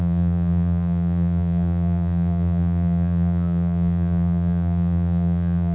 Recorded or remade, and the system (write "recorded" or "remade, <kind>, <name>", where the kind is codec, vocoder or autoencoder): remade, vocoder, BigVGAN v2